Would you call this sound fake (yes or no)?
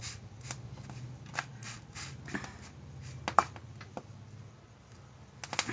no